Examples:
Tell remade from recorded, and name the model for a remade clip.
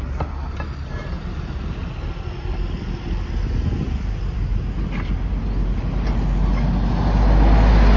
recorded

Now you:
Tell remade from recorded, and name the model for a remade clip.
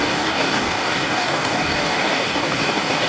remade, codec, DAC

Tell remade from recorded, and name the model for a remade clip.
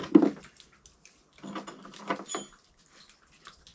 recorded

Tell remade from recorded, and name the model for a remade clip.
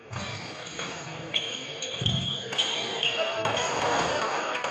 remade, codec, DAC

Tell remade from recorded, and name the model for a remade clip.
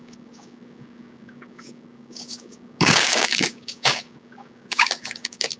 remade, codec, DAC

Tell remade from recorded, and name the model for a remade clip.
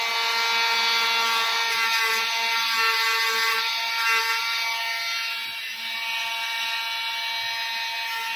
recorded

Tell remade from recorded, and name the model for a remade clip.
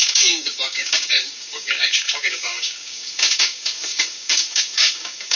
remade, codec, DAC